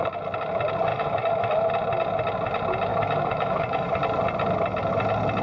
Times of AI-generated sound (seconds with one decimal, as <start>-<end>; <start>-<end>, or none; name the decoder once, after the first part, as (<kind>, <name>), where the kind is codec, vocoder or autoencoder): 0.9-1.7 (autoencoder, DAC-VAE); 2.9-4.0